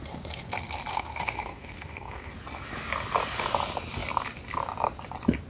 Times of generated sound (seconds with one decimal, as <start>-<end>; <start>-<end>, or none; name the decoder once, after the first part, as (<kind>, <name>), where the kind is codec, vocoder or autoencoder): 0.9-2.3 (codec, SNAC)